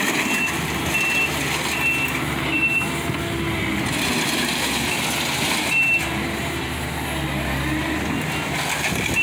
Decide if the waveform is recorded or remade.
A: recorded